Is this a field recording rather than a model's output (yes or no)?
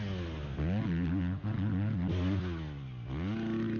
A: yes